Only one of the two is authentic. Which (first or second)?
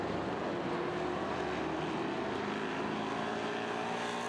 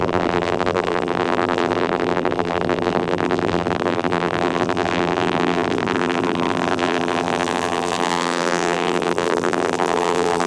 first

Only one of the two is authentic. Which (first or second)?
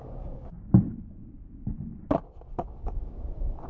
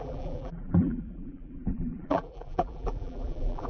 first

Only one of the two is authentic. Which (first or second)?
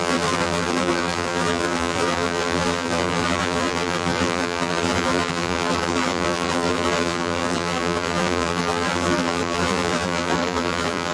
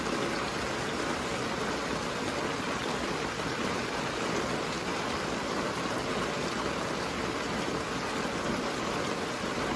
second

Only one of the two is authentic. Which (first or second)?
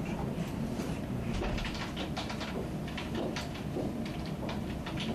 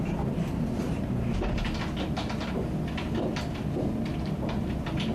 second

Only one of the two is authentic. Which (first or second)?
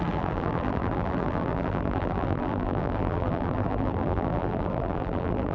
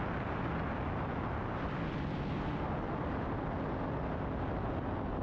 second